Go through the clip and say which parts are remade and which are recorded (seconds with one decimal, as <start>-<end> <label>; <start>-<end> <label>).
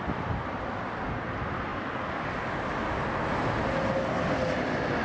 0.0-5.0 recorded